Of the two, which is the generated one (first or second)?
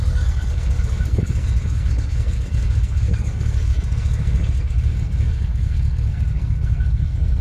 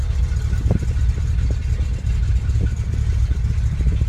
first